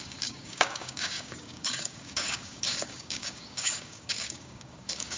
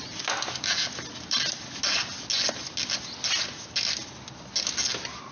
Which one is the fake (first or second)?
first